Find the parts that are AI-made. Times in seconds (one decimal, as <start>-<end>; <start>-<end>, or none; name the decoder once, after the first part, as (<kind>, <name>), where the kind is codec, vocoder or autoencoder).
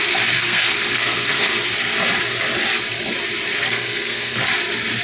0.4-1.5 (codec, SNAC); 3.5-4.4